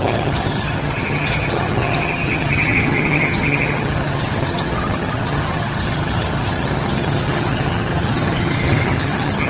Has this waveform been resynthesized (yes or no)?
yes